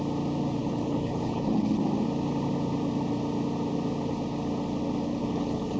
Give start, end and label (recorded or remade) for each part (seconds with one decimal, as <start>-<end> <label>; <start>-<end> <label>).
0.0-0.6 recorded; 0.6-1.8 remade; 1.8-5.1 recorded; 5.1-5.8 remade